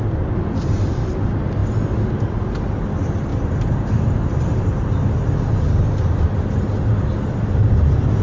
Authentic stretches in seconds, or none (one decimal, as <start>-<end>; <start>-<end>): 0.0-8.2